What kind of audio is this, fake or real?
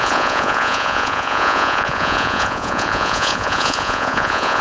fake